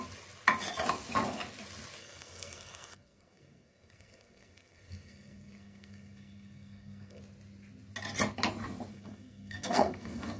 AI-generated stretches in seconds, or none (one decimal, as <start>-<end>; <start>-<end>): 2.0-7.2; 8.9-10.4